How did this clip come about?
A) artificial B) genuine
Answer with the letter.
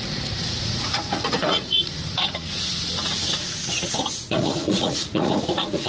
A